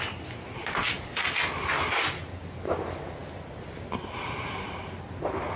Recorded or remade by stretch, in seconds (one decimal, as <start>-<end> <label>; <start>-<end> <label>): 0.0-5.6 recorded